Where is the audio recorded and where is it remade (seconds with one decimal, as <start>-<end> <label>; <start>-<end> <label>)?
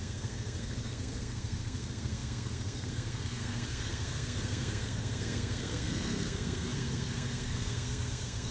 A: 0.0-8.5 remade